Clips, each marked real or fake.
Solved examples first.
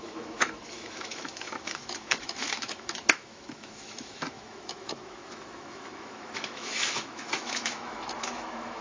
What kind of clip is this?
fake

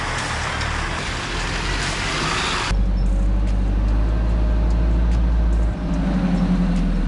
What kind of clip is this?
real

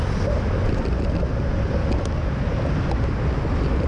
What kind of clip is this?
real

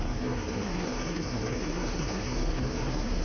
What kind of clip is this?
fake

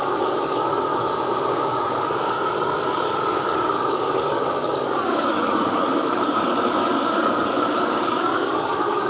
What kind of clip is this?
fake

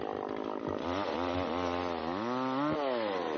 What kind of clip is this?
real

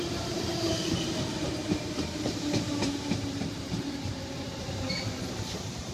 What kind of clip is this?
fake